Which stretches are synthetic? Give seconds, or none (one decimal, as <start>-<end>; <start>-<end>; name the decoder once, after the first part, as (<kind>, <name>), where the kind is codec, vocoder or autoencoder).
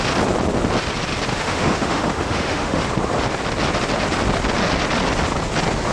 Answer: 1.3-2.8 (autoencoder, DAC-VAE)